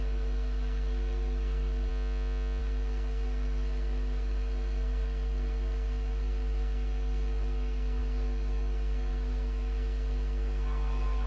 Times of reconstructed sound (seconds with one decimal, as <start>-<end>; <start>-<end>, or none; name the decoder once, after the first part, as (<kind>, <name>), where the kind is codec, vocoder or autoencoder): 0.0-1.9 (codec, SNAC); 2.6-11.3